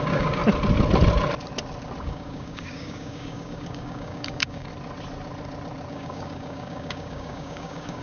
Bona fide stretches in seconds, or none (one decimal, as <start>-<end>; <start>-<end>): 0.4-2.0; 4.7-5.9